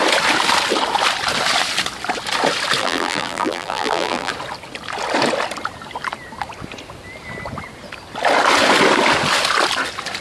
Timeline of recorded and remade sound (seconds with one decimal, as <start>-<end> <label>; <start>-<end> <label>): 0.0-2.8 recorded; 2.8-4.3 remade; 4.3-10.2 recorded